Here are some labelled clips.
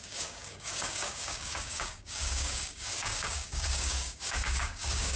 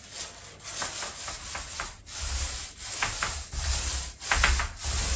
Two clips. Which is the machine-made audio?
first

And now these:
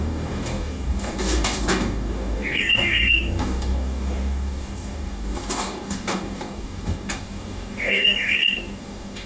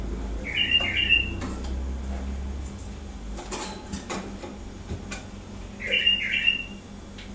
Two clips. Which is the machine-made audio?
first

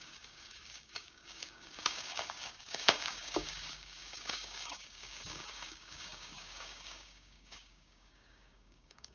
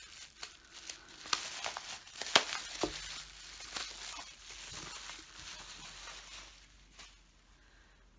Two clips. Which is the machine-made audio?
first